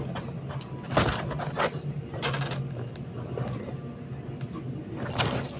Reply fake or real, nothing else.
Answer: real